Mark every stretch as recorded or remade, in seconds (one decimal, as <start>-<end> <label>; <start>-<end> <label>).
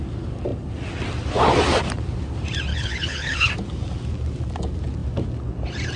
0.0-2.7 recorded; 2.7-3.5 remade; 3.5-6.0 recorded